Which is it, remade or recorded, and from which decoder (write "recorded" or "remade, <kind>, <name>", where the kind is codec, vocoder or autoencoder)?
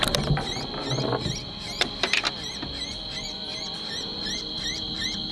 recorded